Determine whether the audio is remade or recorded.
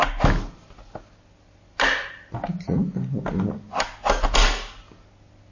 recorded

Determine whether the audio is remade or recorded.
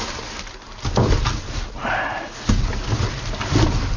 recorded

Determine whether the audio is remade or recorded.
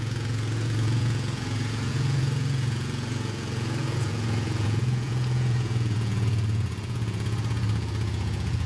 remade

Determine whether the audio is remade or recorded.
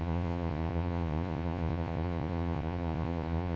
remade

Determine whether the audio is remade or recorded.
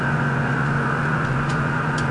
remade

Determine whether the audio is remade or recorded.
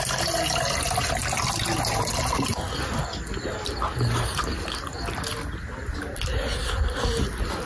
recorded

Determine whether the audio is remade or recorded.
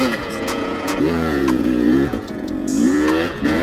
remade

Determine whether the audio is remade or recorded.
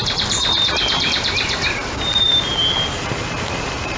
recorded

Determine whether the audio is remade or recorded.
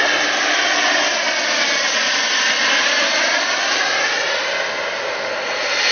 recorded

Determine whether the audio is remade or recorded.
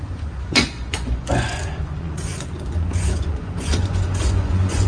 remade